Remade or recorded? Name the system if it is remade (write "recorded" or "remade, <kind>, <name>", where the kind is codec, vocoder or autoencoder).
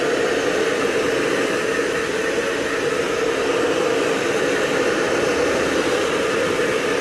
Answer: recorded